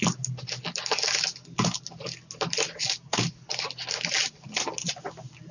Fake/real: real